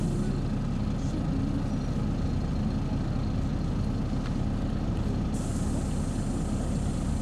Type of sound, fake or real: real